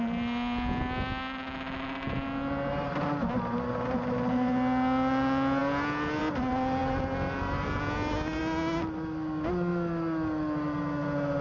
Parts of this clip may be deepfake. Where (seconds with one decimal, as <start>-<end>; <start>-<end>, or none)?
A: none